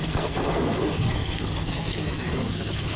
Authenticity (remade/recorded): remade